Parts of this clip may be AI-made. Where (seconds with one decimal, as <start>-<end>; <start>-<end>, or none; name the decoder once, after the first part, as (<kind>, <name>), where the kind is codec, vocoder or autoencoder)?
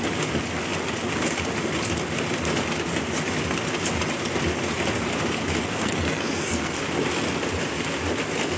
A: 5.6-6.8 (codec, SNAC)